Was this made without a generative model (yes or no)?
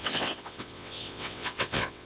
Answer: no